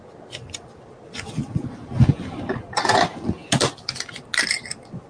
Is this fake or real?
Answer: real